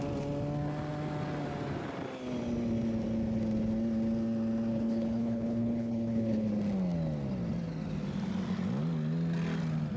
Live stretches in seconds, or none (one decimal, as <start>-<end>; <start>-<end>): 0.0-4.7; 6.5-10.0